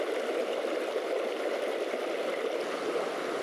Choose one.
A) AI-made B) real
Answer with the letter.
B